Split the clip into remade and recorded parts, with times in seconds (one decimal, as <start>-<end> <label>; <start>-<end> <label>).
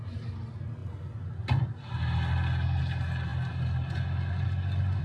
0.0-5.0 recorded